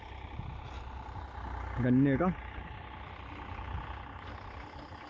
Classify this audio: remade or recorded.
recorded